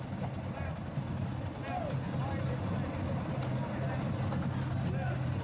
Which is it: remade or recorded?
recorded